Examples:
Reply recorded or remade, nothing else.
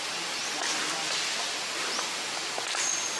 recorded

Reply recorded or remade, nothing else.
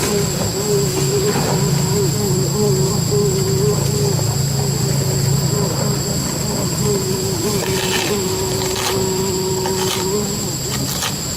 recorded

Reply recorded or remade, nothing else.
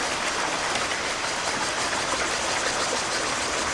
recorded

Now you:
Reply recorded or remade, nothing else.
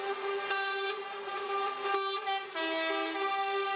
recorded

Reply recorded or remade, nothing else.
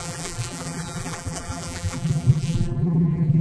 remade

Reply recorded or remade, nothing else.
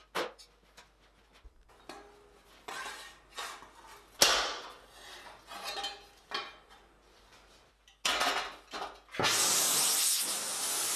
recorded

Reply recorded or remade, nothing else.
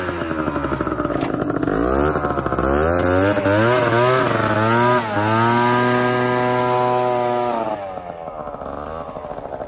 recorded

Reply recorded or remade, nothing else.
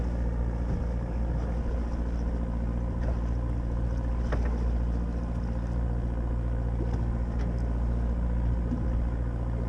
recorded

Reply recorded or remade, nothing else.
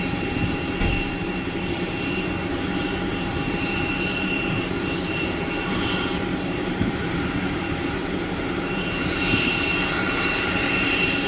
remade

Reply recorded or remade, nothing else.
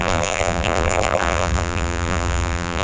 remade